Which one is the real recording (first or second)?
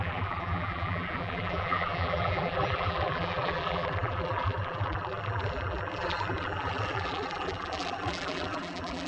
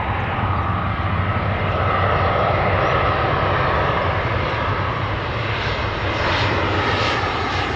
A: second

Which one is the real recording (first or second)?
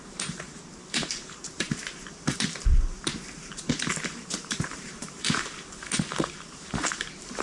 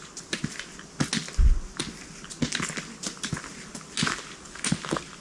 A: second